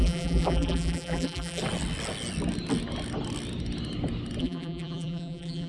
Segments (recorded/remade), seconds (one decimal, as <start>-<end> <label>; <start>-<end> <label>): 0.0-1.6 remade; 1.6-4.4 recorded; 4.4-5.7 remade